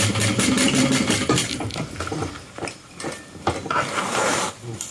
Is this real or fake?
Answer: real